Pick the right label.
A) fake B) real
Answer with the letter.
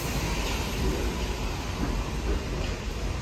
B